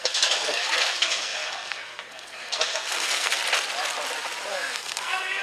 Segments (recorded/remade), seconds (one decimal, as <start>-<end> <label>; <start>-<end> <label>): 0.0-3.4 remade; 3.4-4.5 recorded; 4.5-5.4 remade

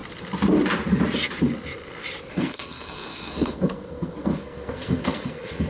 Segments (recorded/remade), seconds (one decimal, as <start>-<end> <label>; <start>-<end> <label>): 0.0-2.3 recorded; 2.3-5.7 remade

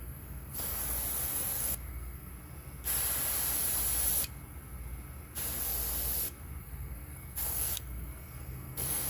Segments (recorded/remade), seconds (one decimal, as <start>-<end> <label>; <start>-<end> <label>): 0.0-0.8 remade; 0.8-1.3 recorded; 1.3-2.3 remade; 2.3-6.6 recorded; 6.6-9.1 remade